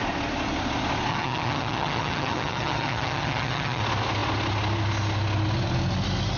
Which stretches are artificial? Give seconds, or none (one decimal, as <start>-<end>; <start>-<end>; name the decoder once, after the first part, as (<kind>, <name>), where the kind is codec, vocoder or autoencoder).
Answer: 1.1-3.8 (vocoder, HiFi-GAN)